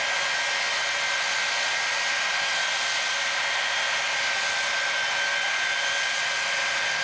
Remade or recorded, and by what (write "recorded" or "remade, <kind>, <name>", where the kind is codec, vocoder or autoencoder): recorded